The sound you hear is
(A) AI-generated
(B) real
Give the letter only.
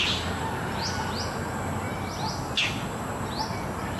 B